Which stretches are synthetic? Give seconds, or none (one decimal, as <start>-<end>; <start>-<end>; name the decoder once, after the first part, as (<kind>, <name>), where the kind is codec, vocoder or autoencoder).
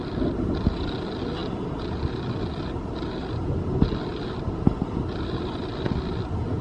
none